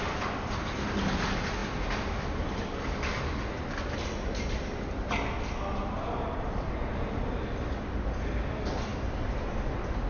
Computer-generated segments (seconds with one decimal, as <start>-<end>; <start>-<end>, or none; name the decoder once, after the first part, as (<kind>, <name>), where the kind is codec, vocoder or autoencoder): none